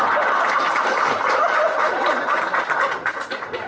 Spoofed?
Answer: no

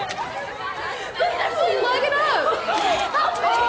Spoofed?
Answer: no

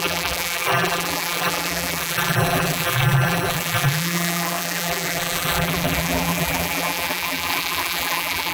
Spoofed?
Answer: yes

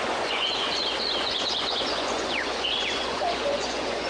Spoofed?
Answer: yes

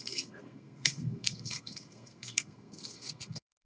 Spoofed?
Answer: yes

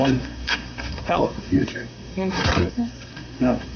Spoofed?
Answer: yes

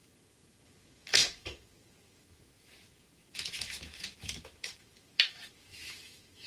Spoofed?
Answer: yes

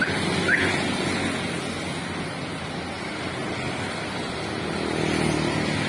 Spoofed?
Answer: no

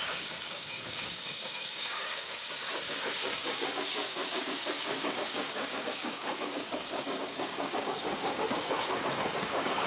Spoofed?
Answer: yes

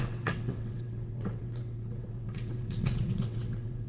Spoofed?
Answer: yes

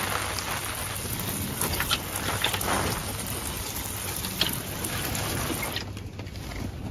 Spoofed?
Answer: no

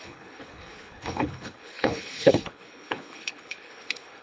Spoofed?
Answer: yes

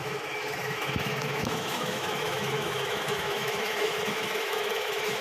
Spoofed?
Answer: yes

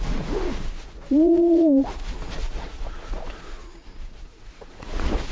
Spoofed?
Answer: yes